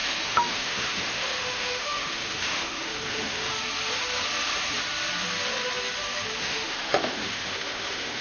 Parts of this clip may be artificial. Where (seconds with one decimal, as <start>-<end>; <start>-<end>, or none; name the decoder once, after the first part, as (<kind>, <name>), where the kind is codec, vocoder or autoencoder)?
0.0-3.5 (autoencoder, DAC-VAE); 6.4-8.2